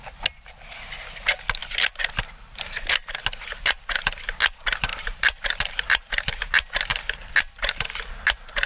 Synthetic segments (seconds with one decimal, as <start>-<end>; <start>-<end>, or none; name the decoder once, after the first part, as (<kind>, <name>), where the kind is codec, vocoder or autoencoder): 1.6-2.9 (vocoder, BigVGAN v2); 4.9-6.3; 6.9-8.1